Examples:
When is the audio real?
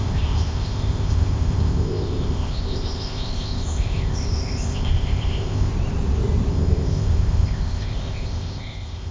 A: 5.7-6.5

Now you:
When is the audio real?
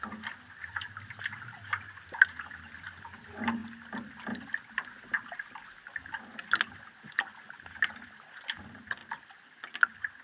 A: 0.0-10.2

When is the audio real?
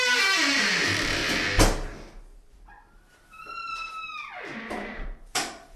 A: 1.2-4.7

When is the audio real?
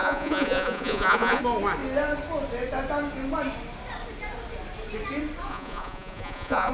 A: 1.4-5.5